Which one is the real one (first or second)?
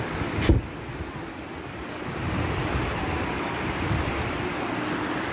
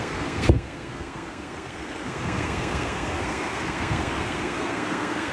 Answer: first